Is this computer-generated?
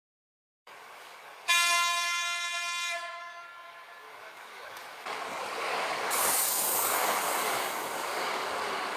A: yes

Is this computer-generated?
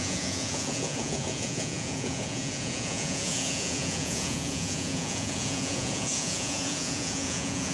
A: yes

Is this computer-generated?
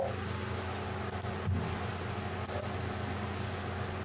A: no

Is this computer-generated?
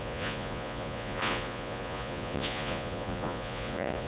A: yes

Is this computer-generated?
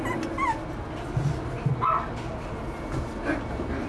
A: no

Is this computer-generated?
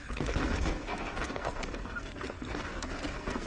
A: yes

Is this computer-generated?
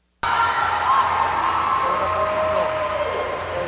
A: no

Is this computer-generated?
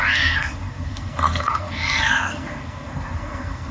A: yes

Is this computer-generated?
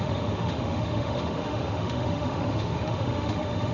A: yes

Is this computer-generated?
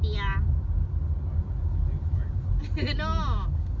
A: no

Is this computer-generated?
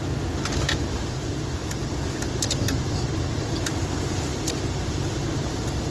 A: no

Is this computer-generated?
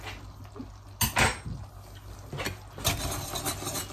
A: no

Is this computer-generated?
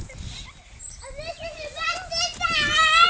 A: no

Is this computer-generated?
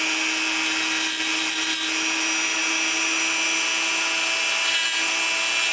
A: no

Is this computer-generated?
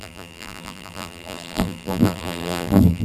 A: yes